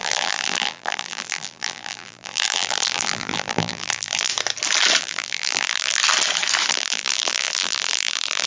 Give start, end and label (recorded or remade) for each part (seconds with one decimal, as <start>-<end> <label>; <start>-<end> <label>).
0.0-4.3 remade; 4.3-5.0 recorded; 5.0-6.0 remade; 6.0-6.7 recorded; 6.7-8.5 remade